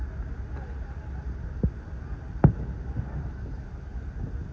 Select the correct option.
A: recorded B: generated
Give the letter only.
A